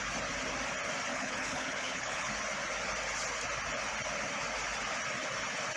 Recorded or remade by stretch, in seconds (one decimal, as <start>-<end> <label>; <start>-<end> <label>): 0.0-1.1 recorded; 1.1-2.3 remade; 2.3-5.8 recorded